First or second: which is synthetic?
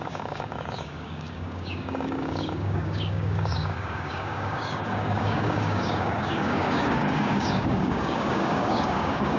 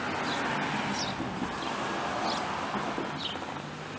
first